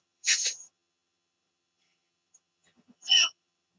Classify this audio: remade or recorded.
remade